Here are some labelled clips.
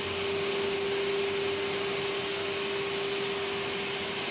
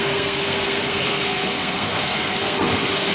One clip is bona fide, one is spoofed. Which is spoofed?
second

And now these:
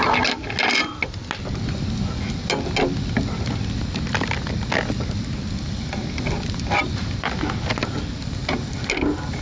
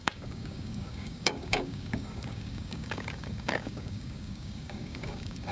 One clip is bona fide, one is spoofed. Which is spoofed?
second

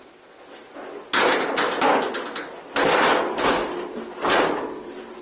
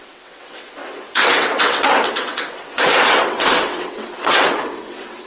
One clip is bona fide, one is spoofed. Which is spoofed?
second